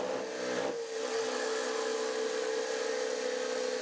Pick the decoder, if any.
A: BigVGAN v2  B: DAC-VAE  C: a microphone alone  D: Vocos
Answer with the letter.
C